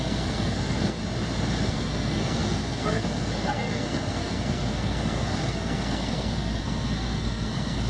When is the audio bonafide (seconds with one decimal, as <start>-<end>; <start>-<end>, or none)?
1.0-1.7